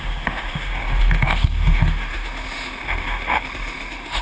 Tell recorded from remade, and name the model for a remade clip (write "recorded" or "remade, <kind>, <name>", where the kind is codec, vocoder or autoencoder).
remade, autoencoder, DAC-VAE